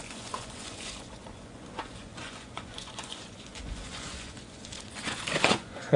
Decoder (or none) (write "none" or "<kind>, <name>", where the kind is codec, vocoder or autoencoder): vocoder, Vocos